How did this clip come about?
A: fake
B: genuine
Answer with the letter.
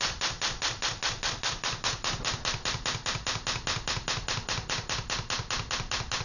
B